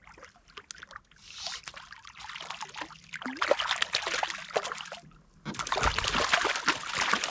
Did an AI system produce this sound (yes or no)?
no